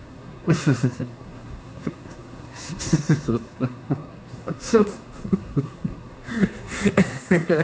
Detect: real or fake fake